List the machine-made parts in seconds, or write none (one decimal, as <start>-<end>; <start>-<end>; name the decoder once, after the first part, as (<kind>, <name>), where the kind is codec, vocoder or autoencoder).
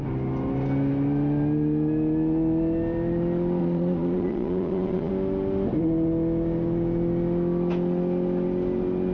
3.6-5.1 (vocoder, Vocos)